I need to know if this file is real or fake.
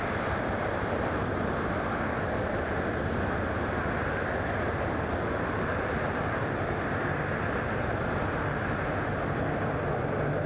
real